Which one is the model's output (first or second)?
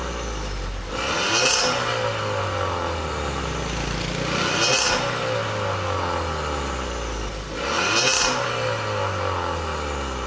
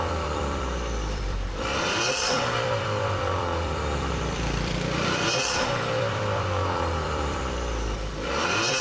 second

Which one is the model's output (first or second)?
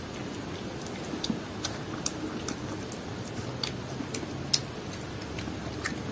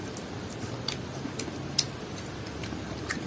second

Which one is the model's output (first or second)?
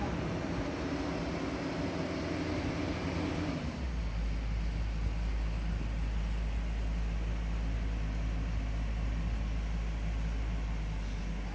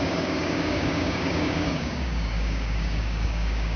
second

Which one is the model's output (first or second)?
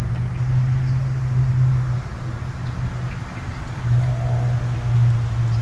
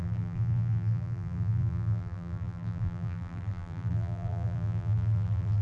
second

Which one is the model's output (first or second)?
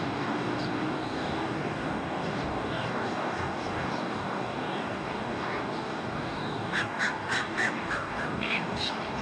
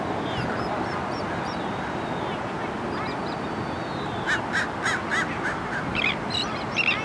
first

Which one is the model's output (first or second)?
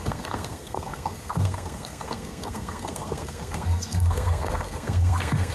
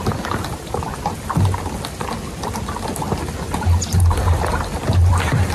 first